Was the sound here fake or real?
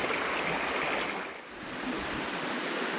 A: real